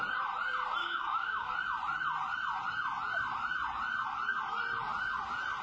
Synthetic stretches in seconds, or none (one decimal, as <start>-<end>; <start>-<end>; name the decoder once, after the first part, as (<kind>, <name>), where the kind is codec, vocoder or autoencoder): 0.8-1.5 (codec, DAC)